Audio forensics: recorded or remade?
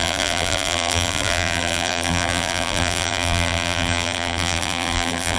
remade